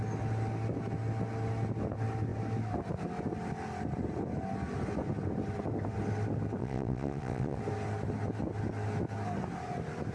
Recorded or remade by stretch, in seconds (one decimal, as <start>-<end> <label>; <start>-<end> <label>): 0.0-6.6 recorded; 6.6-7.6 remade; 7.6-10.1 recorded